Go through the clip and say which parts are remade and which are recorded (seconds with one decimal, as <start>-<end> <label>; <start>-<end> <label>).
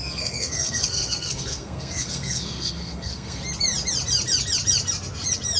0.0-3.4 remade; 3.4-5.6 recorded